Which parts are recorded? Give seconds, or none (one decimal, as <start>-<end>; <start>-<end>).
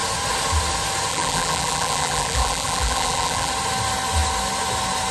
0.0-1.1; 3.5-5.1